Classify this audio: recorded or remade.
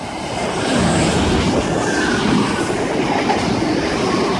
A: recorded